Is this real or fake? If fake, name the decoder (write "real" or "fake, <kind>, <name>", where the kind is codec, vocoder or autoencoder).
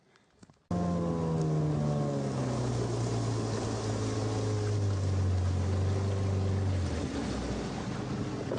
real